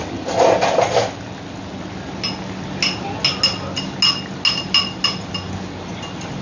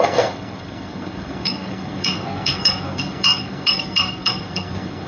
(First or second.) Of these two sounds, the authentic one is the first